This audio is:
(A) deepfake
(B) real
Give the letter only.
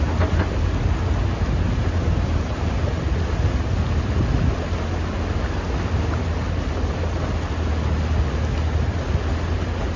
B